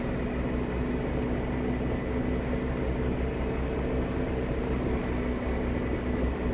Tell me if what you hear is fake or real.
real